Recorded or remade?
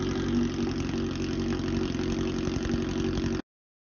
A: recorded